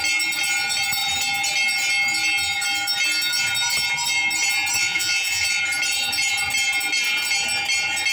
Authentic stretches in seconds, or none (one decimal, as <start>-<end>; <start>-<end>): 0.0-4.8; 5.6-8.1